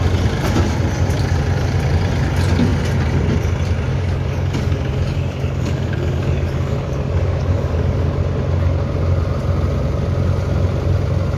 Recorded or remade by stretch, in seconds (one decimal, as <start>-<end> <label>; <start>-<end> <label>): 0.0-3.9 recorded; 3.9-8.2 remade; 8.2-11.4 recorded